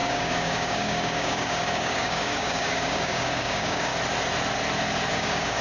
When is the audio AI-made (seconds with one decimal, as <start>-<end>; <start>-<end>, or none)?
0.0-3.9; 5.1-5.6